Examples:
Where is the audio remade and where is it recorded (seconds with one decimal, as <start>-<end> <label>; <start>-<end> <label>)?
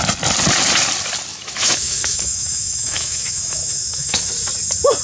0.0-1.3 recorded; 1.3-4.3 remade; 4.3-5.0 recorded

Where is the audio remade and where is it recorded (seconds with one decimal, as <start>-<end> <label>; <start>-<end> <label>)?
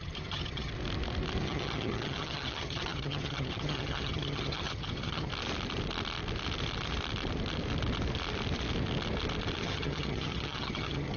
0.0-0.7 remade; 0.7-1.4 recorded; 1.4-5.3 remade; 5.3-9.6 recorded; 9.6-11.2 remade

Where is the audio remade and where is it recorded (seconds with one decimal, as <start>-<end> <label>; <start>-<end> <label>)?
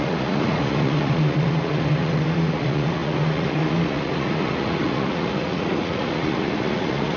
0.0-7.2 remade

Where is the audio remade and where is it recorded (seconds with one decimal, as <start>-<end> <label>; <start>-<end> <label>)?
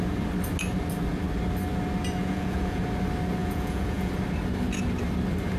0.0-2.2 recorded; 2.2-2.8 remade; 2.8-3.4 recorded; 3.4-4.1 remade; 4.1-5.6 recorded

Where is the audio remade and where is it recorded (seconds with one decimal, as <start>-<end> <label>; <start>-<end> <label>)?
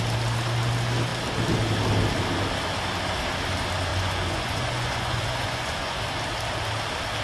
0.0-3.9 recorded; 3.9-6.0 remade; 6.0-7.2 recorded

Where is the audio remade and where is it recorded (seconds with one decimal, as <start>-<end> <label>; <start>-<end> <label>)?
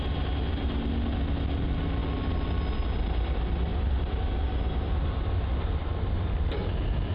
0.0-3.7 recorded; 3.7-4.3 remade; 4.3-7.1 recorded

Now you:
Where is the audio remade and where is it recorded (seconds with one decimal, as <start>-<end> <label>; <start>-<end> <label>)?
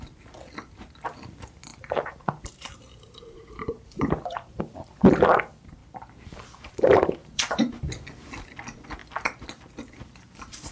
0.0-1.7 recorded; 1.7-4.6 remade; 4.6-7.2 recorded; 7.2-7.8 remade; 7.8-10.7 recorded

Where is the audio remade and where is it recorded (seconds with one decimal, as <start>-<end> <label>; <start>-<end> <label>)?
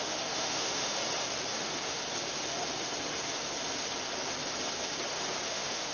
0.0-1.0 remade; 1.0-1.5 recorded; 1.5-2.0 remade; 2.0-5.5 recorded; 5.5-5.9 remade